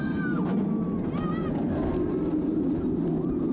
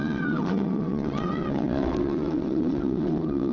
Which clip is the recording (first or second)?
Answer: first